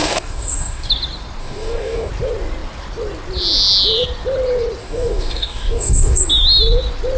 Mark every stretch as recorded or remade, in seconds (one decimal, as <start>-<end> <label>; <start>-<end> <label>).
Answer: 0.0-0.9 remade; 0.9-1.4 recorded; 1.4-2.1 remade; 2.1-4.8 recorded; 4.8-6.2 remade; 6.2-7.2 recorded